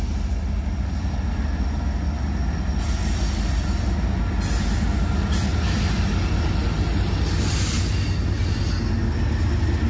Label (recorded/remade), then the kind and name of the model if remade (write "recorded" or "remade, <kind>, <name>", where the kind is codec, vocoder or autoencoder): recorded